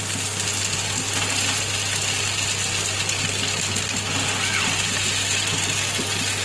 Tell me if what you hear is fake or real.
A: real